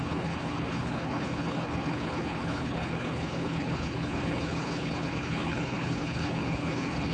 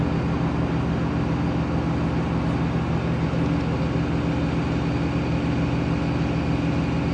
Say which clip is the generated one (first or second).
first